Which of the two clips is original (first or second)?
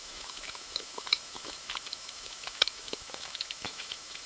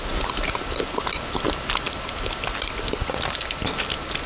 second